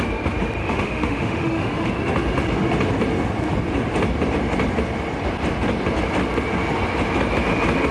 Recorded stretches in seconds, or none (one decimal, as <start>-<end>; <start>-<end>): 0.0-0.6; 1.9-7.9